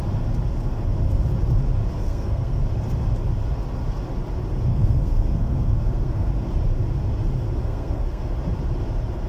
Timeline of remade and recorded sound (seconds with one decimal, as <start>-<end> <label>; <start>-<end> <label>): 0.0-2.0 recorded; 2.0-2.6 remade; 2.6-4.7 recorded; 4.7-6.3 remade; 6.3-7.6 recorded; 7.6-8.2 remade; 8.2-9.3 recorded